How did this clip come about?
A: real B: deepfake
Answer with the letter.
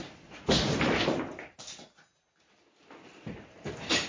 A